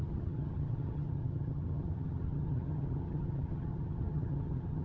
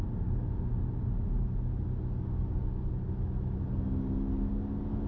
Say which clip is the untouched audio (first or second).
second